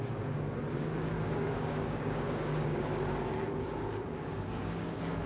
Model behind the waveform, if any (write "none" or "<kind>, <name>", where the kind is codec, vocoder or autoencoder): codec, DAC